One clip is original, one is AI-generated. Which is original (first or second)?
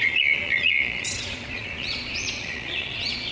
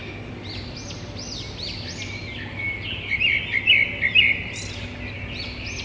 second